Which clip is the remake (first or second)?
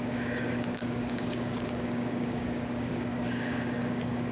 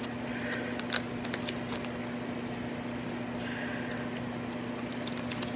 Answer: first